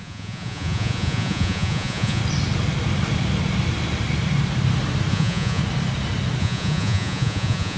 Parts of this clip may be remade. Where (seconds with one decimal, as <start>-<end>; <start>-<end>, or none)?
0.0-2.2; 5.1-5.6; 6.4-7.8

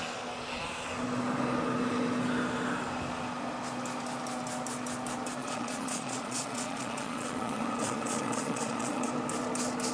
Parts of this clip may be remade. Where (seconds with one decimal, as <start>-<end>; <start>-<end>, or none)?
5.4-9.1

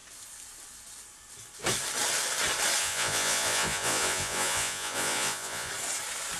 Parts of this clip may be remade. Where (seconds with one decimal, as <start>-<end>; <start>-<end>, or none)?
2.8-5.7

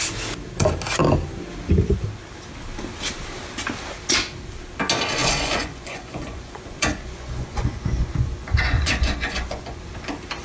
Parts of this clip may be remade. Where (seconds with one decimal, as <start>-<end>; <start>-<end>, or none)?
5.2-9.8

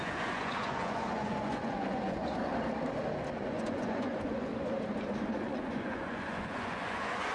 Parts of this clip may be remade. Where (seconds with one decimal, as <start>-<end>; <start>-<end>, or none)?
0.0-2.5; 3.4-4.5; 5.4-7.3